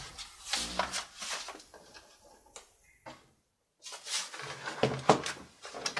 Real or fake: real